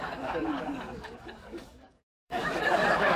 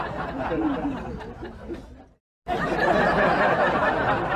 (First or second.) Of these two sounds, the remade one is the first